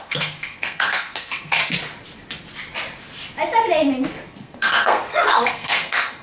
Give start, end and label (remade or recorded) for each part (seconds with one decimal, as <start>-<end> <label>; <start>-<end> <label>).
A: 0.0-1.6 remade; 1.6-4.3 recorded; 4.3-6.2 remade